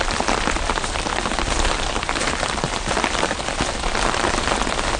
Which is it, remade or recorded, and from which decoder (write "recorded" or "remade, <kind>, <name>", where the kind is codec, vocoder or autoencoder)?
recorded